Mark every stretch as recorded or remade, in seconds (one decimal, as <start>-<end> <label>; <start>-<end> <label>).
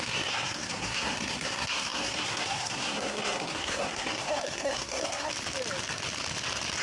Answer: 0.0-5.3 remade; 5.3-6.8 recorded